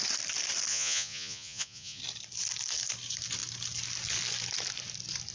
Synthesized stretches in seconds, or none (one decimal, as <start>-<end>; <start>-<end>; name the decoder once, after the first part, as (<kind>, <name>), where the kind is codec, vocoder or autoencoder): 0.7-2.0 (vocoder, Vocos)

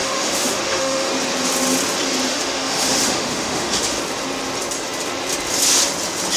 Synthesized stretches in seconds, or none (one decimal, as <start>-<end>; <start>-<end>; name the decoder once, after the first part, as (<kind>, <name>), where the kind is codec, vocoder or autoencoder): 0.0-1.1 (autoencoder, DAC-VAE); 2.3-4.0

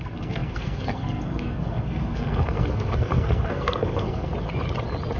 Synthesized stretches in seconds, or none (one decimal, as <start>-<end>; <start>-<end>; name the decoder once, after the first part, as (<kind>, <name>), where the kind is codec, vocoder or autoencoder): 0.0-4.3 (codec, SNAC)

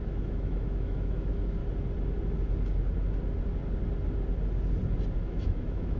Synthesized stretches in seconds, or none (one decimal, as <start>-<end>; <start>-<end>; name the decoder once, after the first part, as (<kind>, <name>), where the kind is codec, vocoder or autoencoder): 0.0-1.6 (autoencoder, DAC-VAE); 5.2-6.0

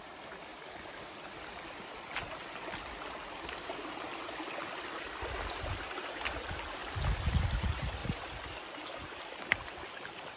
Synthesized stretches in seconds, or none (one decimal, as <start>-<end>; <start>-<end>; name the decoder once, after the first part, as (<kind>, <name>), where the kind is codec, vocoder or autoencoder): none